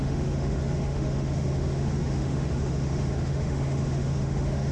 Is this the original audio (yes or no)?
no